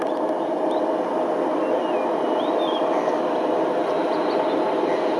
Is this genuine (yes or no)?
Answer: yes